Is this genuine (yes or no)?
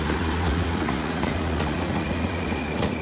no